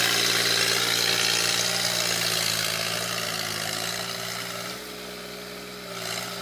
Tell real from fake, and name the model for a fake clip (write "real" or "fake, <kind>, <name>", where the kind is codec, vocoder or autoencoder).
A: real